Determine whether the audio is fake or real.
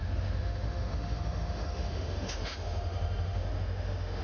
fake